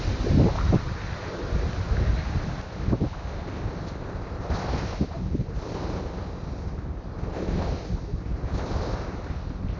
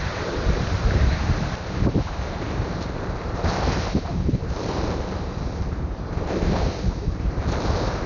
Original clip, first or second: first